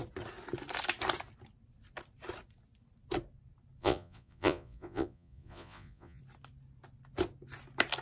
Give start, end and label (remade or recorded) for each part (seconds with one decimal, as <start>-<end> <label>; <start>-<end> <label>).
0.0-3.8 recorded; 3.8-6.2 remade; 6.2-8.0 recorded